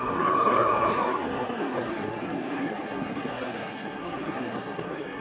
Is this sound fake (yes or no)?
yes